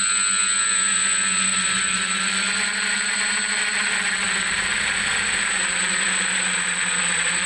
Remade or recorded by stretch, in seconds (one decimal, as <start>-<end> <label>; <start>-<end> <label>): 0.0-1.5 recorded; 1.5-2.2 remade; 2.2-7.5 recorded